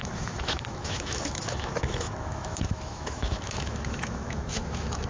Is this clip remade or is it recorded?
remade